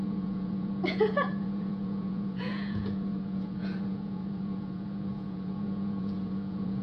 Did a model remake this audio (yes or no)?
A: yes